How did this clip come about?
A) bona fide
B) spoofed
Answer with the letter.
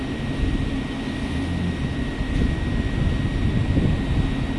A